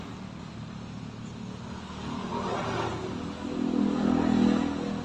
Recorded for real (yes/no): yes